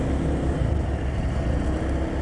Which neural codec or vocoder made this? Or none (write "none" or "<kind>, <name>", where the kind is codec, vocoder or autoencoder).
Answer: none